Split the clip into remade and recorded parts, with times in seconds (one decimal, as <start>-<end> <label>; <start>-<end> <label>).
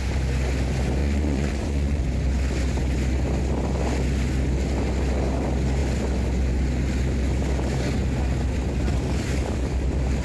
0.0-1.0 recorded; 1.0-2.0 remade; 2.0-10.2 recorded